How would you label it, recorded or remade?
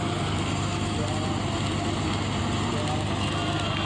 recorded